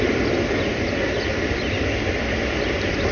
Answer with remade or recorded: recorded